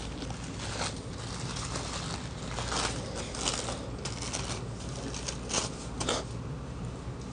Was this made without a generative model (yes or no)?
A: yes